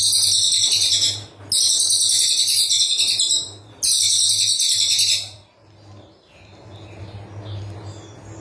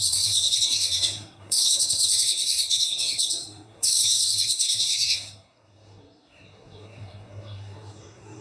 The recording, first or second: first